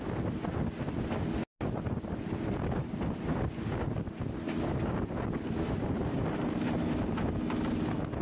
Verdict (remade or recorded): recorded